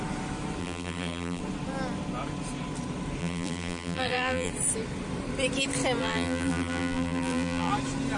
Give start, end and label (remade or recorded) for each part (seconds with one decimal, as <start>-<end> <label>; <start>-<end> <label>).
0.0-0.6 recorded; 0.6-1.4 remade; 1.4-3.2 recorded; 3.2-4.5 remade; 4.5-6.0 recorded; 6.0-7.7 remade; 7.7-8.2 recorded